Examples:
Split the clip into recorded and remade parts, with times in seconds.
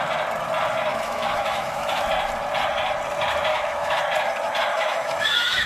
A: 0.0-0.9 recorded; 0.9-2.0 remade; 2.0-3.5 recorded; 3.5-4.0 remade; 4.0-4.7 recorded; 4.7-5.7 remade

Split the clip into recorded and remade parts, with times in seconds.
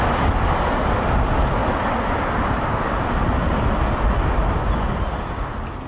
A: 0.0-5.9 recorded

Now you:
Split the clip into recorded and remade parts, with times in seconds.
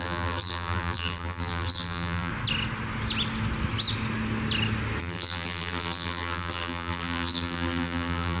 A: 0.0-2.3 remade; 2.3-5.0 recorded; 5.0-8.4 remade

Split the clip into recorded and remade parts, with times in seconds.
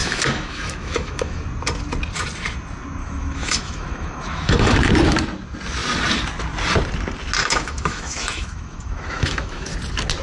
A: 0.0-1.4 remade; 1.4-3.0 recorded; 3.0-4.9 remade; 4.9-7.4 recorded; 7.4-9.7 remade; 9.7-10.2 recorded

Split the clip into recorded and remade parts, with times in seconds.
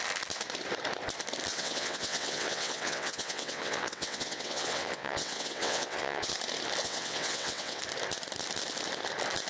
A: 0.0-1.5 recorded; 1.5-6.3 remade; 6.3-6.8 recorded; 6.8-7.8 remade; 7.8-9.5 recorded